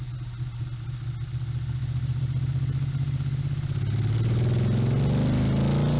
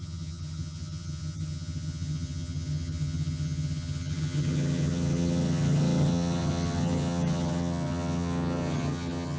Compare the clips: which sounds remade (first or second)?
second